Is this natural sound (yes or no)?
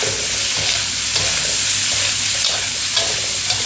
yes